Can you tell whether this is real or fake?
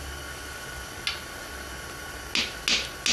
real